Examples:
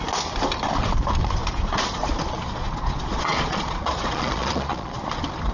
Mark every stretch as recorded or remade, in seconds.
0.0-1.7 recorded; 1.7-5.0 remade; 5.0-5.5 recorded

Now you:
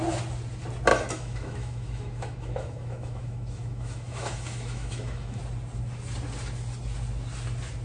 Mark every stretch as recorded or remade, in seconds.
0.0-0.9 recorded; 0.9-5.4 remade; 5.4-7.8 recorded

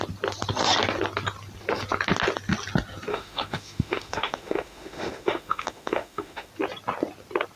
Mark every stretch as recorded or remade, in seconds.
0.0-3.1 recorded; 3.1-6.5 remade; 6.5-7.6 recorded

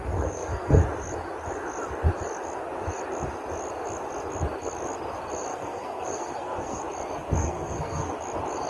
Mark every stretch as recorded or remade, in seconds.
0.0-0.8 remade; 0.8-5.5 recorded; 5.5-6.8 remade; 6.8-7.4 recorded; 7.4-8.1 remade; 8.1-8.7 recorded

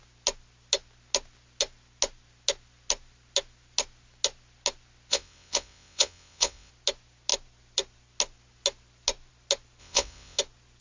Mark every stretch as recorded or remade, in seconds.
0.0-5.1 recorded; 5.1-6.7 remade; 6.7-9.8 recorded; 9.8-10.4 remade; 10.4-10.8 recorded

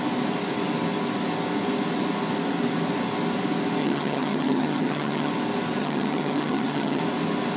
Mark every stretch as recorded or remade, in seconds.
0.0-3.8 recorded; 3.8-5.3 remade; 5.3-5.8 recorded; 5.8-7.0 remade; 7.0-7.6 recorded